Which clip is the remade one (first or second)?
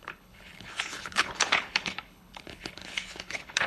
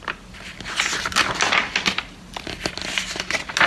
first